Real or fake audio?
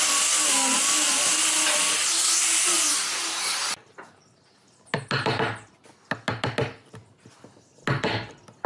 real